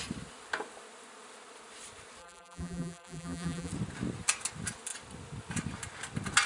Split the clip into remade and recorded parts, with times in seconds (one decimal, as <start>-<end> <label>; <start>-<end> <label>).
0.0-2.2 recorded; 2.2-3.7 remade; 3.7-6.5 recorded